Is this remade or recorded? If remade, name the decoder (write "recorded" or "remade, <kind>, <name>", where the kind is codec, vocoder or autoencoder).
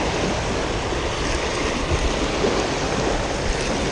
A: recorded